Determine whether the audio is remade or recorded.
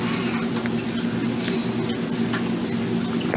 recorded